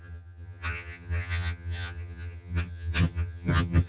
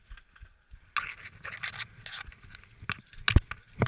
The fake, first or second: first